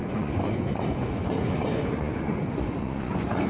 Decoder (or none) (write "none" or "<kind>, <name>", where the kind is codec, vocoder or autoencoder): vocoder, Vocos